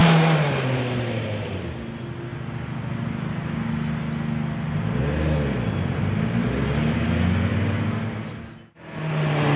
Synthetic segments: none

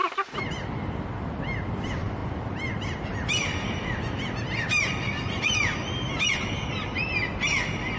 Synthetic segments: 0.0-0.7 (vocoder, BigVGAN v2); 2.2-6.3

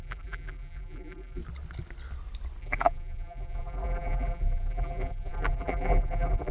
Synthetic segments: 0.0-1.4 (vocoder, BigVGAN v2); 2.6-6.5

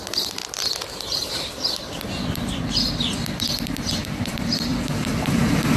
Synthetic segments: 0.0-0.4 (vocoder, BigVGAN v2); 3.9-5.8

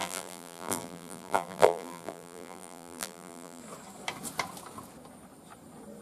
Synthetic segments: 0.0-3.6 (vocoder, BigVGAN v2)

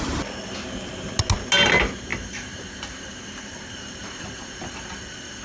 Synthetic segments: 2.1-5.4 (vocoder, BigVGAN v2)